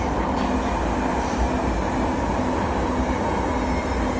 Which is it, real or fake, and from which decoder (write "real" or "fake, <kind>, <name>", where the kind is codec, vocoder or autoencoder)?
real